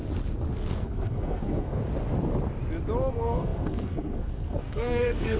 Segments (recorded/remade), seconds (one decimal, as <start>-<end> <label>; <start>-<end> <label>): 0.0-0.5 recorded; 0.5-1.8 remade; 1.8-3.1 recorded; 3.1-5.4 remade